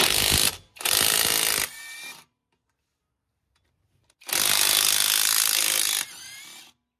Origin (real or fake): real